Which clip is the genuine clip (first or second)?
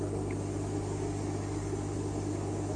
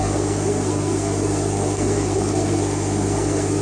first